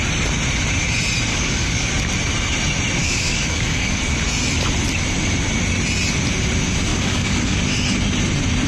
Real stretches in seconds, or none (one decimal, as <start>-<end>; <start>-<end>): 0.0-1.3; 1.9-3.0; 4.0-6.9; 7.6-8.7